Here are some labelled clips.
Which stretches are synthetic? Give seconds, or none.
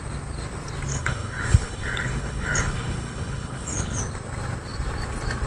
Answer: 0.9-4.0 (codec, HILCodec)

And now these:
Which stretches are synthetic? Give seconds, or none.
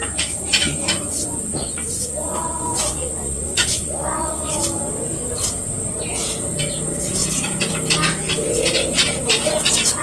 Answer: 0.5-4.6 (vocoder, Vocos)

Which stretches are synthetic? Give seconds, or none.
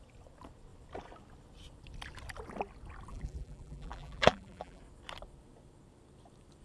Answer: 3.1-4.8 (vocoder, BigVGAN v2)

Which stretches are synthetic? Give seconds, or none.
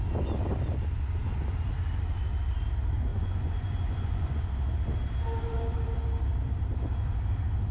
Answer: 3.1-4.5 (vocoder, Vocos)